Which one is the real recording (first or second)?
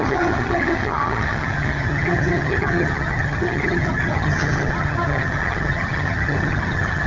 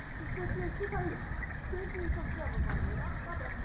second